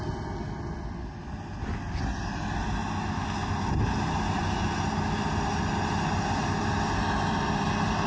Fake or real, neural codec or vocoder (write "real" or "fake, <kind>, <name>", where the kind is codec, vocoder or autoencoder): real